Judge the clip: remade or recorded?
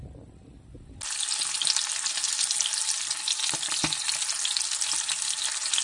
recorded